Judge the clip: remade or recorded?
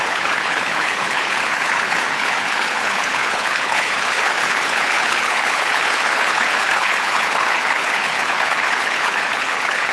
remade